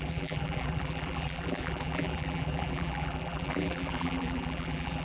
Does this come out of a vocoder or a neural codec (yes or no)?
yes